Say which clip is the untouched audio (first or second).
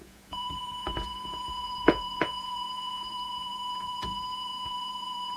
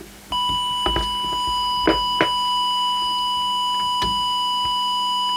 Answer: second